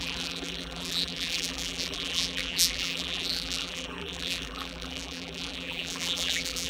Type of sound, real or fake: fake